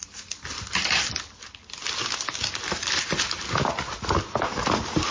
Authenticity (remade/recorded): recorded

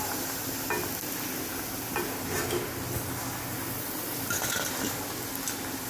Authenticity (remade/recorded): recorded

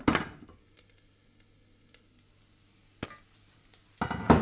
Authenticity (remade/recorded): recorded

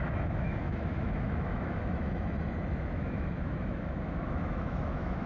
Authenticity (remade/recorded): remade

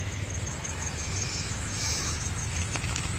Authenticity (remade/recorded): remade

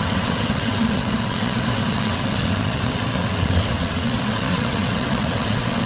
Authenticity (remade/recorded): remade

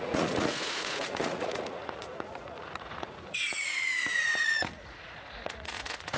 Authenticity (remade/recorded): remade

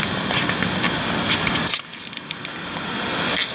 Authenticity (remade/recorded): recorded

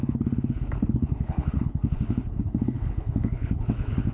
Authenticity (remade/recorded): remade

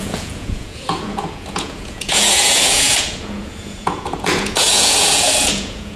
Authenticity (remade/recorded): remade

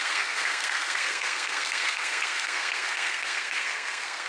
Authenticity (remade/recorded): remade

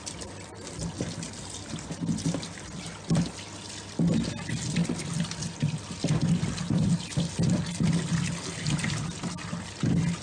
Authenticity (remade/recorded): recorded